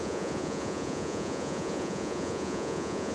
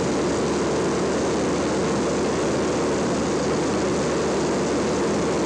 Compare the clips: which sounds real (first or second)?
second